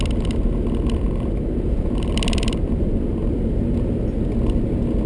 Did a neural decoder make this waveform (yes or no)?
no